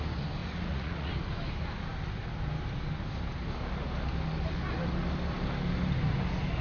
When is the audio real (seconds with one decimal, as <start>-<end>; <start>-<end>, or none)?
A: 0.0-0.4; 1.1-6.6